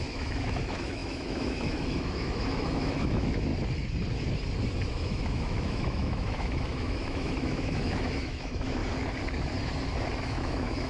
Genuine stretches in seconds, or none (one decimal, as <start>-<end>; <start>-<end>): 3.5-4.9; 8.8-10.2